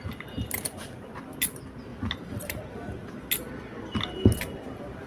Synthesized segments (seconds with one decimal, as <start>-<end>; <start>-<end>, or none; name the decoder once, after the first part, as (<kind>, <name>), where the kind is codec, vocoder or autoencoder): none